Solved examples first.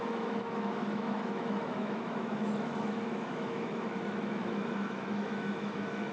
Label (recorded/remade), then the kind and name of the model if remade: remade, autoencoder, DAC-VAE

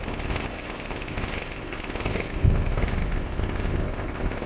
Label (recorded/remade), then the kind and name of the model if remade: remade, codec, ZipCodec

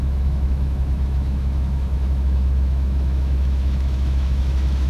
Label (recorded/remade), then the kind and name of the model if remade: remade, autoencoder, DAC-VAE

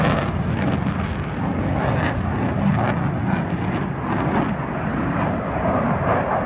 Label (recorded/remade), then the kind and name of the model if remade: recorded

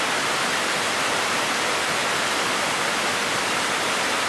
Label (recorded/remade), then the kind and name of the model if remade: recorded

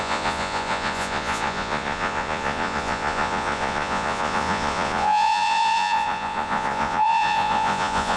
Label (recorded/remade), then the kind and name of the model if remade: remade, vocoder, Vocos